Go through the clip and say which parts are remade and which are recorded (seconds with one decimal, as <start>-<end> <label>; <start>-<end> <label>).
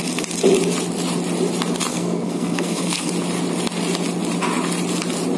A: 0.0-1.9 recorded; 1.9-3.1 remade; 3.1-5.4 recorded